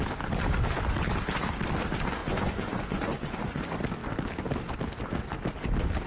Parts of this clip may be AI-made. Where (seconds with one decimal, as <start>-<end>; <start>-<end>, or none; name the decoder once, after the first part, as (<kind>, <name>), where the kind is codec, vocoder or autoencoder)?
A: 2.2-3.6 (vocoder, Vocos)